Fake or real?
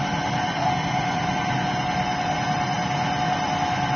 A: real